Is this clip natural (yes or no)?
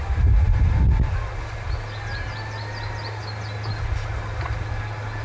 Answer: yes